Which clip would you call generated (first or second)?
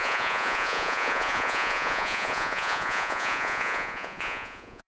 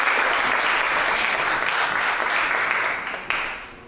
first